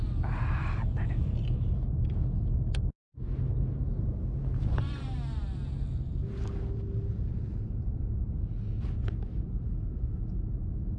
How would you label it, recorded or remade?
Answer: recorded